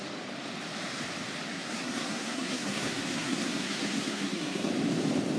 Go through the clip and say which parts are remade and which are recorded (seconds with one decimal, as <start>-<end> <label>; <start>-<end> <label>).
0.0-1.5 recorded; 1.5-4.7 remade; 4.7-5.4 recorded